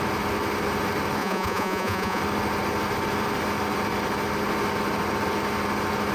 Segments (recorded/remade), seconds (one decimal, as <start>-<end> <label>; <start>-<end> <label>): 0.0-1.2 recorded; 1.2-2.2 remade; 2.2-6.1 recorded